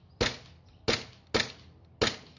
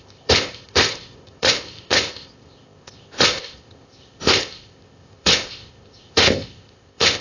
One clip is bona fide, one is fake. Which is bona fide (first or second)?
first